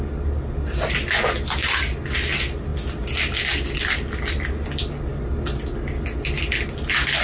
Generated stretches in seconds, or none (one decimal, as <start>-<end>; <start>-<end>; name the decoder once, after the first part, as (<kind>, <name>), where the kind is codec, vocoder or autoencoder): none